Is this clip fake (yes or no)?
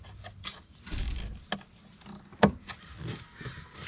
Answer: no